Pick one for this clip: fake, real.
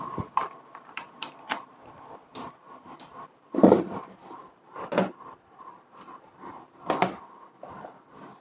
fake